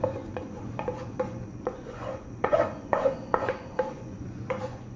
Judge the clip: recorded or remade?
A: remade